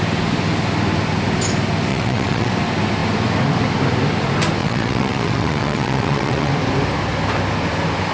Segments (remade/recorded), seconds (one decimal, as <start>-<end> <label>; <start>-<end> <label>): 0.0-1.9 recorded; 1.9-2.5 remade; 2.5-4.6 recorded; 4.6-6.5 remade; 6.5-8.1 recorded

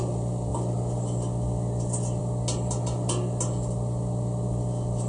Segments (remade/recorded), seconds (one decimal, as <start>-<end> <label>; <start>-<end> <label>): 0.0-5.1 recorded

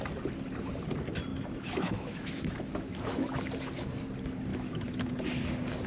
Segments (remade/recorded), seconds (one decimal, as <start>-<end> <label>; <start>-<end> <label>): 0.0-1.3 recorded; 1.3-3.4 remade; 3.4-4.5 recorded; 4.5-5.1 remade; 5.1-5.9 recorded